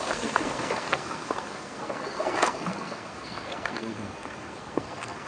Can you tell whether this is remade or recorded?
remade